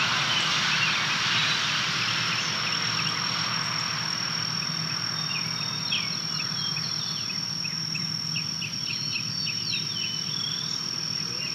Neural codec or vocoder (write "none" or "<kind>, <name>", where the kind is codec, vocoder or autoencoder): none